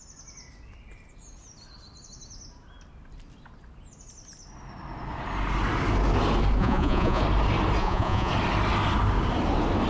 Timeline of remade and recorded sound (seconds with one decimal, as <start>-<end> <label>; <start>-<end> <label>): 0.0-6.6 recorded; 6.6-7.2 remade; 7.2-7.8 recorded; 7.8-8.3 remade; 8.3-9.9 recorded